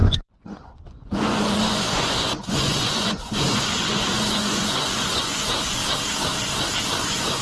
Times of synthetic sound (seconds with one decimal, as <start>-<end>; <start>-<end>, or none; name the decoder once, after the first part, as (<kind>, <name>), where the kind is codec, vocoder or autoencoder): 0.0-5.8 (vocoder, Vocos); 7.0-7.4